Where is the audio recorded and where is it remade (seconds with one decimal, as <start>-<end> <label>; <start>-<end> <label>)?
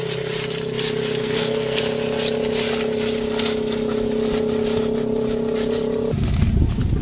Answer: 0.0-1.2 recorded; 1.2-1.8 remade; 1.8-7.0 recorded